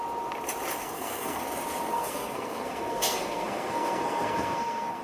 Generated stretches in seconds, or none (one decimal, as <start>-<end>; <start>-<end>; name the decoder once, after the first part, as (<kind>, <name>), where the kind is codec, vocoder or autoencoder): 0.8-1.4 (codec, SNAC); 1.9-5.0

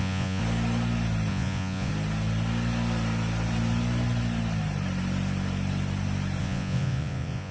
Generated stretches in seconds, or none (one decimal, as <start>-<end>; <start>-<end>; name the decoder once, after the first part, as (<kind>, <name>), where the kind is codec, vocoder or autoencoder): 0.0-0.4 (vocoder, Vocos); 1.3-1.9; 6.4-7.5

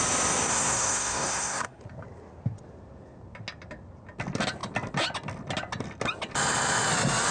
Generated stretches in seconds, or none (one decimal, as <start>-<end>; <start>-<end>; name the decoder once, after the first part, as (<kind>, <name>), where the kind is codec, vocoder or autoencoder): 0.5-1.8 (codec, SNAC)

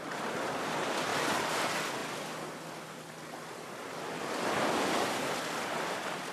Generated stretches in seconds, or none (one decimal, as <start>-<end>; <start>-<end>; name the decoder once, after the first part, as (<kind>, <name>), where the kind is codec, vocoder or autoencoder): 1.1-1.6 (vocoder, BigVGAN v2)

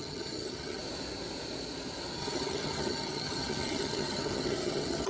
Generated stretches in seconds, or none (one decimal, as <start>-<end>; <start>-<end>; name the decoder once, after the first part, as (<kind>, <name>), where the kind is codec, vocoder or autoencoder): 0.0-0.8 (vocoder, HiFi-GAN); 2.2-5.1

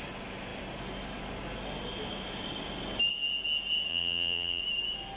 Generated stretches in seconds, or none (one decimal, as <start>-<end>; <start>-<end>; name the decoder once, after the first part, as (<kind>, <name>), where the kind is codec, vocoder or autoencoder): 3.9-4.6 (vocoder, BigVGAN v2)